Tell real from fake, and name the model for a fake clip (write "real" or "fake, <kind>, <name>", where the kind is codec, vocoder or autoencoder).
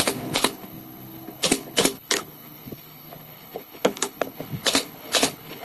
fake, codec, HILCodec